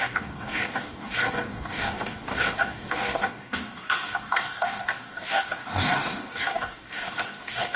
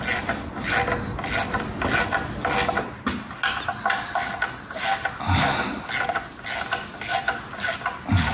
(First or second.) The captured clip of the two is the second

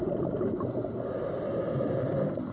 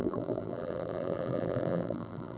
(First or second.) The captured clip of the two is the first